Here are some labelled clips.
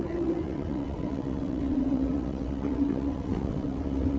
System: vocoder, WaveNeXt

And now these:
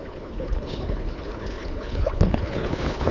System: codec, HILCodec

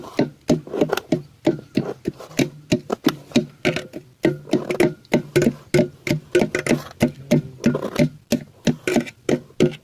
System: none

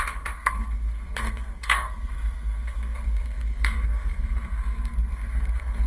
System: codec, SNAC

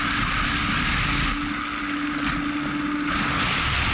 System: none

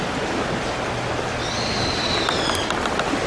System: none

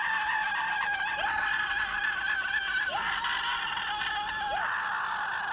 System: none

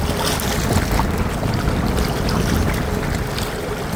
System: none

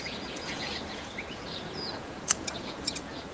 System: vocoder, Vocos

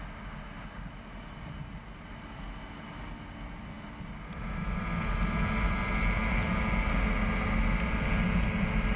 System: none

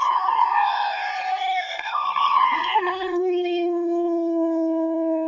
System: codec, SNAC